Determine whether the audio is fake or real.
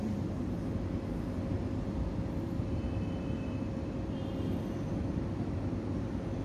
real